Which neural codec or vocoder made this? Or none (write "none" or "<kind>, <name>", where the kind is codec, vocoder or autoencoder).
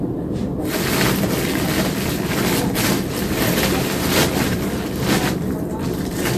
none